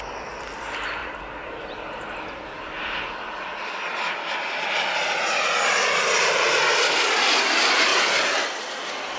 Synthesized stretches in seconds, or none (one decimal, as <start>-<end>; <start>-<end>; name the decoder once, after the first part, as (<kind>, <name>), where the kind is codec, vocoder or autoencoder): none

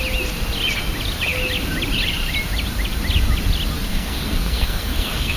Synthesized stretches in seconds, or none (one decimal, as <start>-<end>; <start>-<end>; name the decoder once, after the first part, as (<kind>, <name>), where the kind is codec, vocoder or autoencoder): 3.9-5.4 (codec, SNAC)

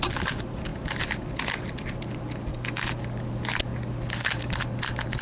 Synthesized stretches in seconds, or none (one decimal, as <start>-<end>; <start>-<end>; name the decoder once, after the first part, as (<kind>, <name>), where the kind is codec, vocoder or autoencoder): 2.5-3.0 (codec, DAC)